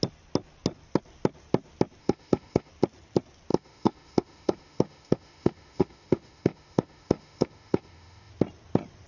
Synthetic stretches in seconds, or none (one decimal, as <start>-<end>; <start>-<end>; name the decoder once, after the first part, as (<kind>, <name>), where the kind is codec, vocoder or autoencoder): 2.0-2.7 (autoencoder, DAC-VAE); 3.5-8.3